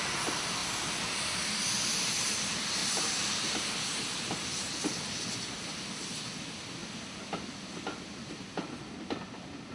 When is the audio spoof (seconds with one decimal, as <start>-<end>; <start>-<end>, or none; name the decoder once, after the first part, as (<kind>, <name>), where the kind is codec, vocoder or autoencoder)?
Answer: 2.8-4.5 (vocoder, BigVGAN v2)

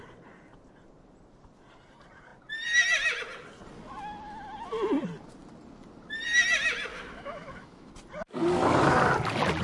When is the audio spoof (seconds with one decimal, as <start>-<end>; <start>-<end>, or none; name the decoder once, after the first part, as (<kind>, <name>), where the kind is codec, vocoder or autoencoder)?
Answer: 6.9-7.9 (autoencoder, DAC-VAE)

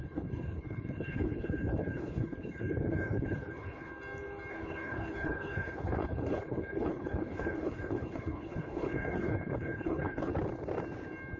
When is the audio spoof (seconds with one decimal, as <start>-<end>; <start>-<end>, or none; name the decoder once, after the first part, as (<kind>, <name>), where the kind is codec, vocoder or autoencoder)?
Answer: 0.0-3.9 (codec, HILCodec); 4.5-10.3

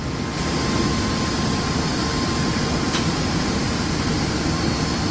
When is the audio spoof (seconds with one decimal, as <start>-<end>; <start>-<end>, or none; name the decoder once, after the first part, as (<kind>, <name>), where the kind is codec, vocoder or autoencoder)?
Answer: none

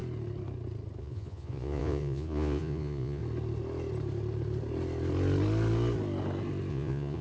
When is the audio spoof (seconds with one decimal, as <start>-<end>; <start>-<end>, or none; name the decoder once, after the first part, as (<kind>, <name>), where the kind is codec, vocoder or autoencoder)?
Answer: 1.0-3.2 (vocoder, Vocos); 6.7-7.2